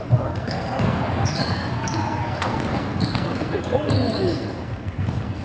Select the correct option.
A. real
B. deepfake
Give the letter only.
B